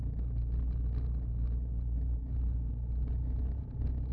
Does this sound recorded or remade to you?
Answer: recorded